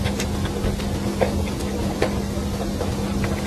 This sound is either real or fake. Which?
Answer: real